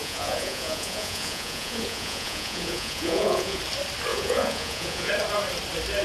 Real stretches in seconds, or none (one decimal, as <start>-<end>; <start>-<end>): 3.6-4.1; 5.1-6.0